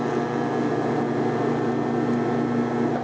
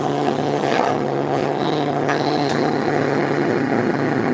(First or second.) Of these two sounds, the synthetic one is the second